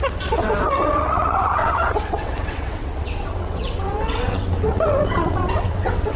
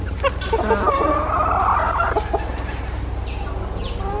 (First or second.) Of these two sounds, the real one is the second